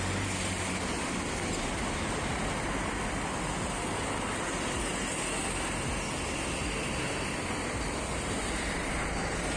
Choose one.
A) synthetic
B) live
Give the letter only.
B